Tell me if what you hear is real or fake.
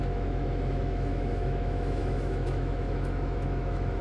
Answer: fake